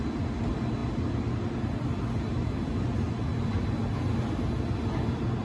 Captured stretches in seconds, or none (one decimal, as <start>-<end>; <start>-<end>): 0.0-5.4